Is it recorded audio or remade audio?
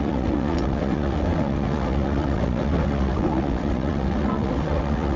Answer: remade